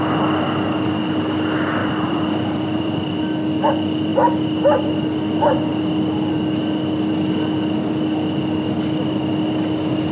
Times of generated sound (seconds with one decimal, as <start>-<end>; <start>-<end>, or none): 1.8-3.2